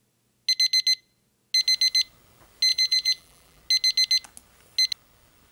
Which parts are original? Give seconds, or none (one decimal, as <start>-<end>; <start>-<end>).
0.0-2.7; 3.6-5.5